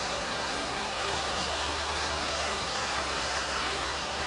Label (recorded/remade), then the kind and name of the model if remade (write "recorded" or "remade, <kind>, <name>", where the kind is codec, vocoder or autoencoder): remade, codec, SNAC